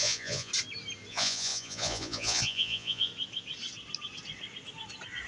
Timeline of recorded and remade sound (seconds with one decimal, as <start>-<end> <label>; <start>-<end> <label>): 0.0-0.5 remade; 0.5-1.1 recorded; 1.1-3.1 remade; 3.1-5.3 recorded